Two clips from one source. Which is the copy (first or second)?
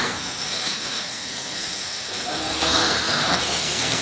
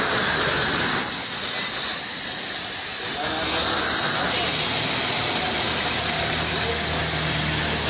first